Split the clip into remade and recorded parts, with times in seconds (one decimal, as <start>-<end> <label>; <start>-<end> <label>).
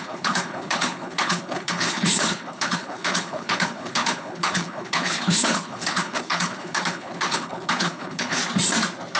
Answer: 0.0-8.4 remade; 8.4-9.2 recorded